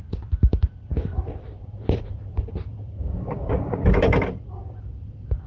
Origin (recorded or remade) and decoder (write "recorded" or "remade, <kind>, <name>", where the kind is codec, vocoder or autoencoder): remade, vocoder, BigVGAN v2